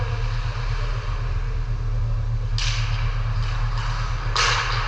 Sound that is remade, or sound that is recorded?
recorded